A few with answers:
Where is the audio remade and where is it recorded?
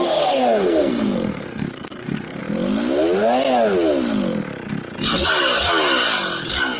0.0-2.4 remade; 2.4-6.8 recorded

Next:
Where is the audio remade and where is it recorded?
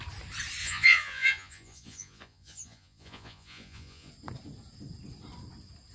0.0-0.6 recorded; 0.6-4.1 remade; 4.1-5.9 recorded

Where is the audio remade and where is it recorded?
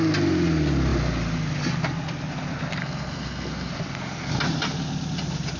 0.0-2.8 recorded; 2.8-3.7 remade; 3.7-5.6 recorded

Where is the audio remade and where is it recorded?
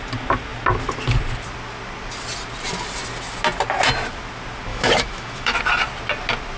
0.0-4.7 recorded; 4.7-5.6 remade; 5.6-6.6 recorded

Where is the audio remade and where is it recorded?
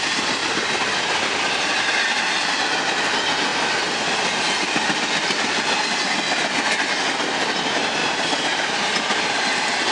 0.0-0.4 recorded; 0.4-1.4 remade; 1.4-8.0 recorded; 8.0-8.9 remade; 8.9-9.9 recorded